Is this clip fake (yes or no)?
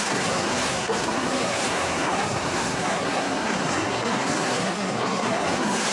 yes